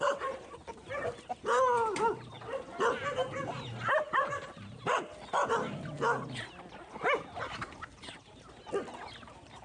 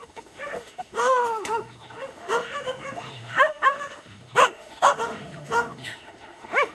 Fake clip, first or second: second